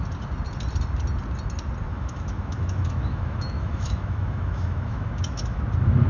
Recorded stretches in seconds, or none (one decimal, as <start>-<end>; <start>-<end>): 0.0-1.9; 5.6-6.1